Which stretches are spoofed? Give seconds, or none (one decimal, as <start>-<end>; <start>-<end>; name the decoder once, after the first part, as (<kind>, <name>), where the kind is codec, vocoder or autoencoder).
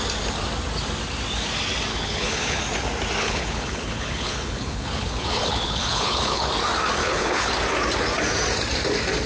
1.9-2.6 (codec, HILCodec); 3.2-6.5; 7.0-7.5